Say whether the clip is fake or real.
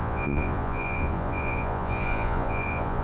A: fake